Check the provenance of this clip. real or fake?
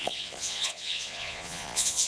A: fake